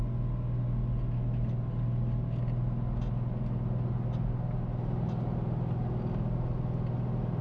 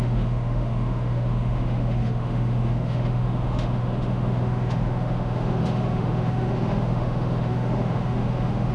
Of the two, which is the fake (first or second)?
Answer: second